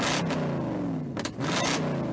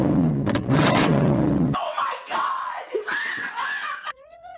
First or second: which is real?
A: first